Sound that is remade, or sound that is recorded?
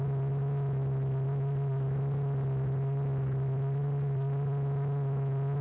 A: recorded